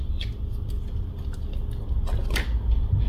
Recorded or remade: recorded